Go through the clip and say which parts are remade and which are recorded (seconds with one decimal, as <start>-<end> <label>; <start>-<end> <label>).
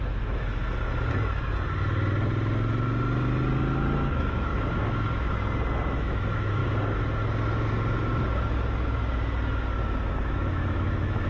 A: 0.0-0.6 remade; 0.6-4.1 recorded; 4.1-4.5 remade; 4.5-6.0 recorded; 6.0-6.6 remade; 6.6-10.1 recorded; 10.1-11.3 remade